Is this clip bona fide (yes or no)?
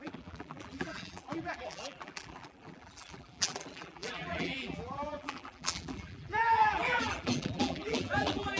no